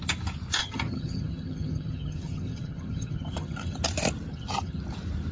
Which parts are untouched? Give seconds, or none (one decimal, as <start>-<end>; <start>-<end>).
0.0-0.6; 3.8-4.3; 4.8-5.3

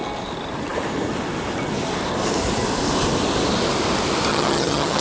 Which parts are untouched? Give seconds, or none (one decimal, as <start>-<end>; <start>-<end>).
0.0-4.3